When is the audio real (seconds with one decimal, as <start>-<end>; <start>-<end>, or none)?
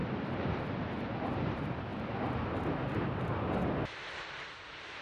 1.9-2.9; 3.6-4.4